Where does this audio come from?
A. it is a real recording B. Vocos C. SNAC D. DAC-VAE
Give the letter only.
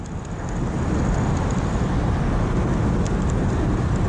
A